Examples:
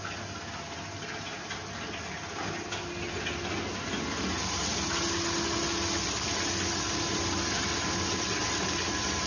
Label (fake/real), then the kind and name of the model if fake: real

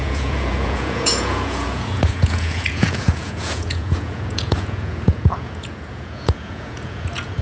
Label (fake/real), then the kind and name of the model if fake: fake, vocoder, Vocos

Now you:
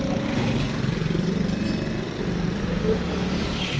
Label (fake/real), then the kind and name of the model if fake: real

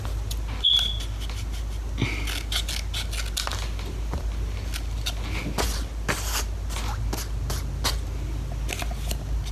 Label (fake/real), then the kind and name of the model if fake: real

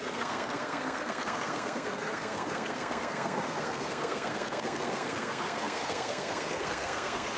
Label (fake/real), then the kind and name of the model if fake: fake, codec, SNAC